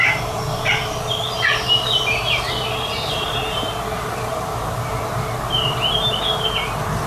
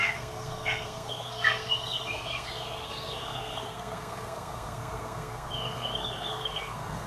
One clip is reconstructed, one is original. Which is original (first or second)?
first